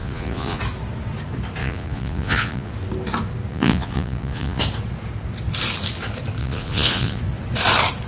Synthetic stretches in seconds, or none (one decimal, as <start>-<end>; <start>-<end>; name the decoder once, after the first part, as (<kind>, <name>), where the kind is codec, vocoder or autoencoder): 0.0-0.6 (vocoder, Vocos); 1.6-2.7; 3.5-4.6; 6.4-7.2